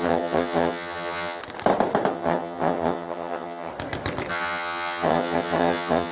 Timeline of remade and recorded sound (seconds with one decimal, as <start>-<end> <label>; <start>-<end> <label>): 0.0-1.4 remade; 1.4-2.1 recorded; 2.1-3.7 remade; 3.7-4.3 recorded; 4.3-6.1 remade